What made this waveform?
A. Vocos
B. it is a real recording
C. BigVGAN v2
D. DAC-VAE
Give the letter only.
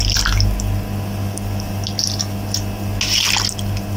B